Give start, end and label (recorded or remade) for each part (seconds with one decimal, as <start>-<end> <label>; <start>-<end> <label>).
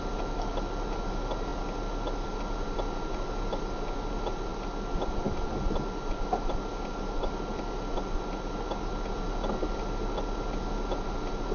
0.0-4.5 recorded; 4.5-8.8 remade; 8.8-11.5 recorded